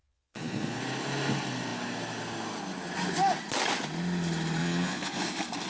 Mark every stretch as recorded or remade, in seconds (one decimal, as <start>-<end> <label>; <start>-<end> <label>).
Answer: 0.0-0.8 remade; 0.8-4.6 recorded; 4.6-5.2 remade; 5.2-5.7 recorded